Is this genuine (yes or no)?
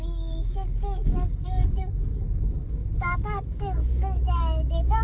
no